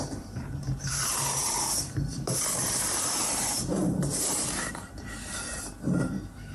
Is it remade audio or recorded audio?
remade